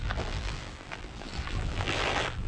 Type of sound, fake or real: fake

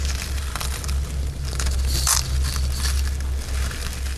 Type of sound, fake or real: fake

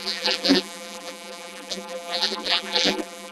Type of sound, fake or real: fake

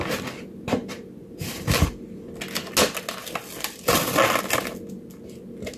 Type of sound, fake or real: real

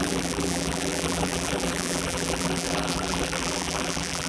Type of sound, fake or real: fake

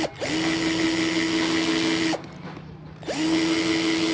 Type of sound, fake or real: real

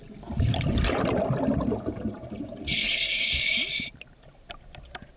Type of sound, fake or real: real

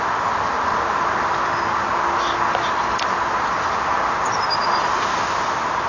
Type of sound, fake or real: real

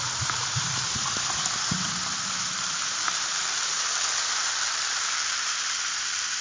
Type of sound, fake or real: fake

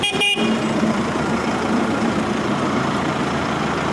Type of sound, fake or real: fake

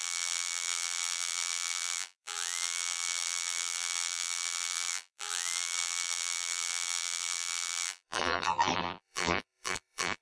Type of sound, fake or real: fake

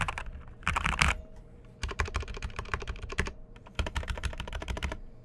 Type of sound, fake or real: fake